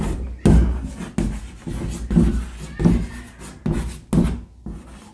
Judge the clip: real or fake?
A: real